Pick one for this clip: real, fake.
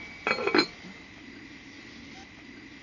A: real